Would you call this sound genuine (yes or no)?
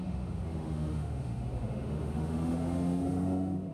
no